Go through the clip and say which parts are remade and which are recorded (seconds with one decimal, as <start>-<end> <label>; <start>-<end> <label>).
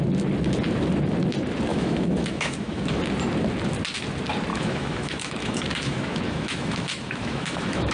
0.0-1.7 recorded; 1.7-3.0 remade; 3.0-4.5 recorded; 4.5-7.9 remade